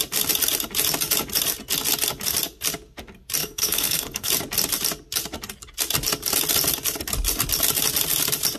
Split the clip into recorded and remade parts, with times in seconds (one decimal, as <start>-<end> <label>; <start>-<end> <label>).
0.0-3.4 recorded; 3.4-4.3 remade; 4.3-8.6 recorded